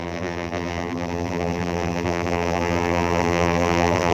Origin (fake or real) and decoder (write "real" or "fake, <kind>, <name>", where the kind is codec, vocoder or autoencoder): fake, vocoder, BigVGAN v2